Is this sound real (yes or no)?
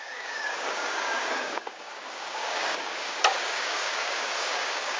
no